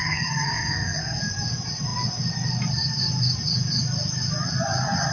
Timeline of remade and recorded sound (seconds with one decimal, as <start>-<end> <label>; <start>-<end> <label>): 0.0-1.2 remade; 1.2-5.1 recorded